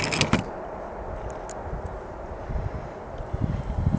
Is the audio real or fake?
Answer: real